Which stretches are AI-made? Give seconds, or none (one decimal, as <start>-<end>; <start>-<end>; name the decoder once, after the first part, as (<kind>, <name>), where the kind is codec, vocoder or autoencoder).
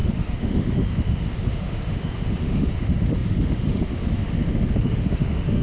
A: 0.0-5.6 (autoencoder, DAC-VAE)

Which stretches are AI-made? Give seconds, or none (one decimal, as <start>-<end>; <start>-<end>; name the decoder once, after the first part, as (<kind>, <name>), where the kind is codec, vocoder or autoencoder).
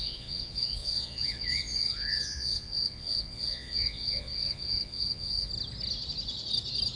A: 0.0-5.5 (vocoder, Vocos)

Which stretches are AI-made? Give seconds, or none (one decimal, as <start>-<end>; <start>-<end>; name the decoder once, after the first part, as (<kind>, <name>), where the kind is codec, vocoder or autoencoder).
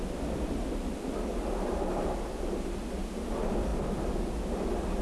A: none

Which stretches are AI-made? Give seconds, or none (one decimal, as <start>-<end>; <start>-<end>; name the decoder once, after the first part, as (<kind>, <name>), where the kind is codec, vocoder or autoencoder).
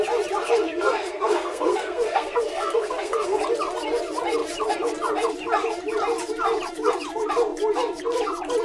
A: 0.4-3.4 (codec, SNAC)